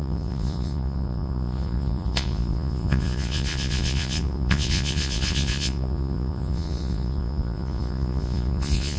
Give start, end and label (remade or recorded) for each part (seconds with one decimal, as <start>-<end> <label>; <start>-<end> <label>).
0.0-9.0 remade